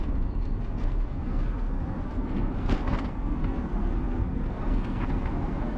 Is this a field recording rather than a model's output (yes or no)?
no